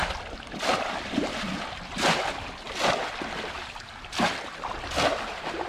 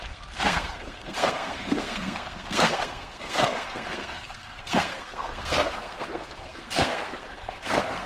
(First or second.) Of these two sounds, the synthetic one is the second